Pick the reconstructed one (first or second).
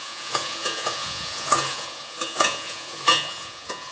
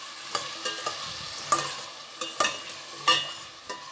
first